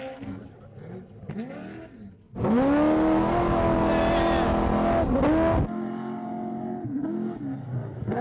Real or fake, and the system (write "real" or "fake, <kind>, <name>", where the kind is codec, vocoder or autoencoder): real